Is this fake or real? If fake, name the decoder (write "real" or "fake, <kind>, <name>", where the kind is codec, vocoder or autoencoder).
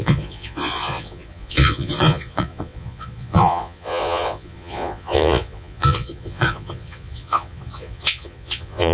fake, vocoder, Vocos